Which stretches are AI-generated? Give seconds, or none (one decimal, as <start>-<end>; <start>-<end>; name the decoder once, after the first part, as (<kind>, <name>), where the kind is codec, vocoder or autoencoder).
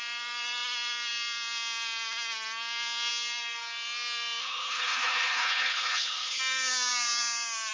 4.4-6.4 (codec, HILCodec)